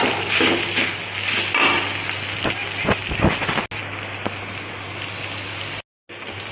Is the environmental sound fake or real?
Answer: real